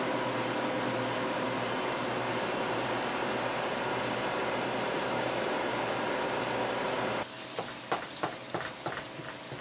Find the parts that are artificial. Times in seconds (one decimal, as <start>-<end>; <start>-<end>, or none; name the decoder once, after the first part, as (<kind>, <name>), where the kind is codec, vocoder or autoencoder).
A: 2.3-7.2 (vocoder, BigVGAN v2)